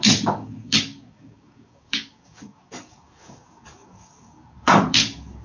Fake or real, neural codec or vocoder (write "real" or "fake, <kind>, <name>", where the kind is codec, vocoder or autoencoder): fake, codec, DAC